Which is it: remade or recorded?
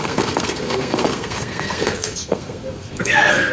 remade